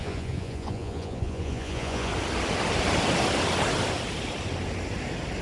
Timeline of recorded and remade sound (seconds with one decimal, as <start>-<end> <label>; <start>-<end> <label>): 0.0-2.1 remade; 2.1-5.4 recorded